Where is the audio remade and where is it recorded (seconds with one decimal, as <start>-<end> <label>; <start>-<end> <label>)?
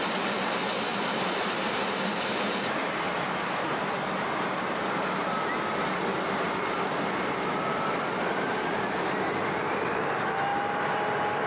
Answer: 0.0-11.5 recorded